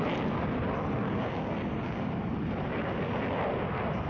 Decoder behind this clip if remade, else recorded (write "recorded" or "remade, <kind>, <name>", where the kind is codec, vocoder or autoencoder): recorded